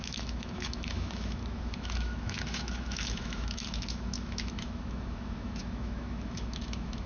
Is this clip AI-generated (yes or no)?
yes